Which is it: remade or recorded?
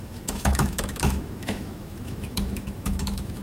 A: remade